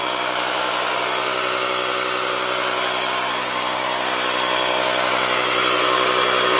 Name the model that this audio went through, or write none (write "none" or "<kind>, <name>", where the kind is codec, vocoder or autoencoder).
none